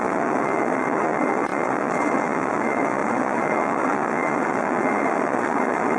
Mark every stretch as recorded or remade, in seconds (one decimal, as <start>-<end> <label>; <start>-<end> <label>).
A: 0.0-6.0 remade